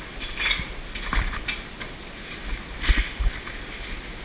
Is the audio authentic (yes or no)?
yes